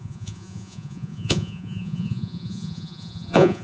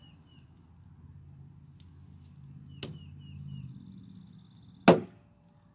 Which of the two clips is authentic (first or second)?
second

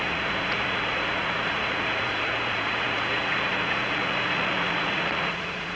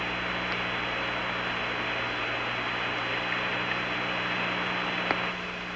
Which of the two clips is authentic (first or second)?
second